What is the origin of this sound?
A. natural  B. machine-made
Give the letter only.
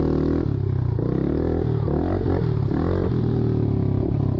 A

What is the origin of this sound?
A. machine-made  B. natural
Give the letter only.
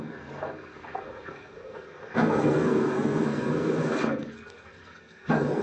A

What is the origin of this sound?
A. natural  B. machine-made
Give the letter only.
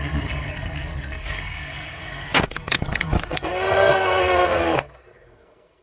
B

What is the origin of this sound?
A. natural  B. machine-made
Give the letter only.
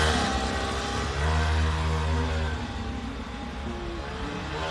A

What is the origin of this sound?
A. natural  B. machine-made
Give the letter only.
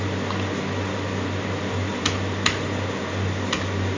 A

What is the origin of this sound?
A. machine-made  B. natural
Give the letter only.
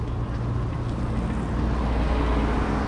B